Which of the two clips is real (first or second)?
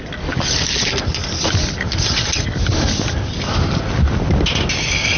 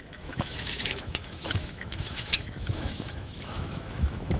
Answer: first